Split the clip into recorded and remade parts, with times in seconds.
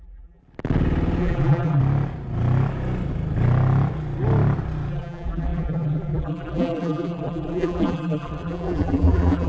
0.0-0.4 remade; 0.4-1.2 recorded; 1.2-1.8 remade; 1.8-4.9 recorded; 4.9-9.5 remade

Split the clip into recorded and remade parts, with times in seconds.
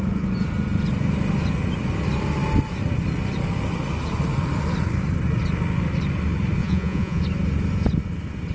0.0-6.6 recorded; 6.6-7.2 remade; 7.2-8.5 recorded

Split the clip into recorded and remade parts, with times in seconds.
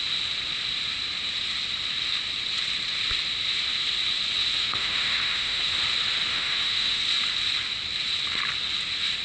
0.0-4.6 recorded; 4.6-5.6 remade; 5.6-6.3 recorded; 6.3-7.0 remade; 7.0-9.2 recorded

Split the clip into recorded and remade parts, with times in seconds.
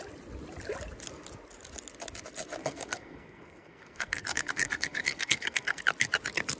0.0-2.6 recorded; 2.6-5.8 remade; 5.8-6.6 recorded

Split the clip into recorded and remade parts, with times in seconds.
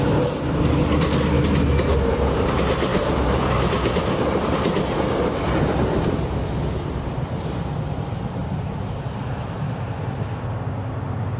0.0-2.9 recorded; 2.9-3.5 remade; 3.5-8.4 recorded; 8.4-9.9 remade; 9.9-11.4 recorded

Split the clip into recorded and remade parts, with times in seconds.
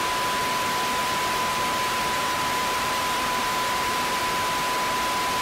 0.0-1.0 recorded; 1.0-4.2 remade; 4.2-5.4 recorded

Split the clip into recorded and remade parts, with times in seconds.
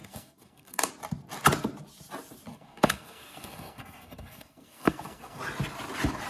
0.0-0.9 remade; 0.9-2.5 recorded; 2.5-5.4 remade; 5.4-6.3 recorded